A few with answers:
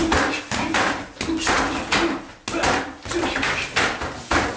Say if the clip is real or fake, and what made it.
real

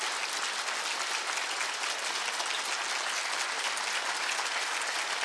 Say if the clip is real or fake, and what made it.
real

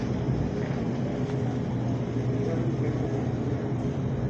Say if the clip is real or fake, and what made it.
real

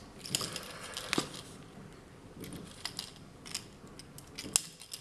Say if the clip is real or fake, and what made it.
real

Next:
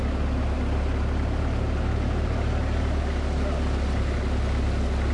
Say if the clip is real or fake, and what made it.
real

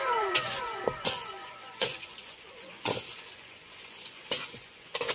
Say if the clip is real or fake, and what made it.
fake, vocoder, Vocos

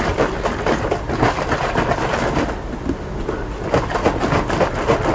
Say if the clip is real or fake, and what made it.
real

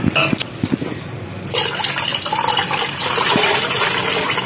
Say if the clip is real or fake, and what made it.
real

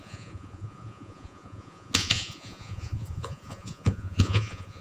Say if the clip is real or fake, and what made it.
fake, vocoder, Vocos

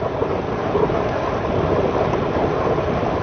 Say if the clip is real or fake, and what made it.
real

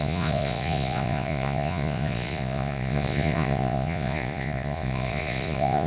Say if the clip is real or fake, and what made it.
fake, vocoder, Vocos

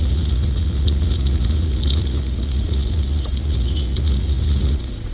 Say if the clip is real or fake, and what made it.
fake, vocoder, Vocos